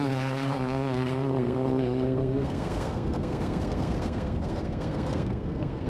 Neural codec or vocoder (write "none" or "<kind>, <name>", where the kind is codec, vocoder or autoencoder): codec, SNAC